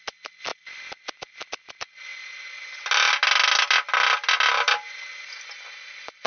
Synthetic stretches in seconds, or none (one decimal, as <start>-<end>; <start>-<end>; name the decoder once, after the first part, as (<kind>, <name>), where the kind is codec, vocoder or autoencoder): 0.5-1.7 (vocoder, BigVGAN v2)